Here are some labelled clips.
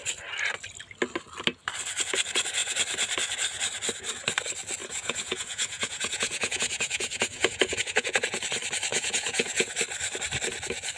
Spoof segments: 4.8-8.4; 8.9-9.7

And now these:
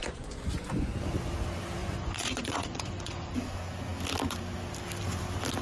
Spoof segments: 0.0-0.9; 1.8-3.3

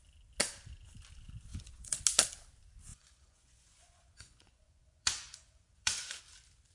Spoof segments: 1.5-2.0; 2.9-6.2

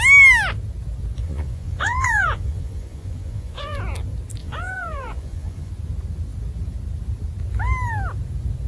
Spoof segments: 1.2-3.8; 4.4-5.7

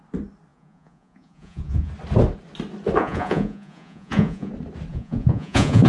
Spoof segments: 0.5-1.9; 3.0-4.5; 4.9-5.9

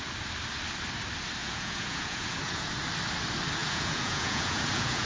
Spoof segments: 1.4-2.7; 3.6-5.1

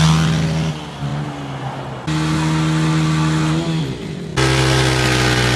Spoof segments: none

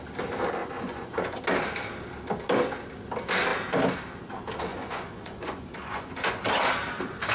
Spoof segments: 0.6-1.4; 4.7-6.4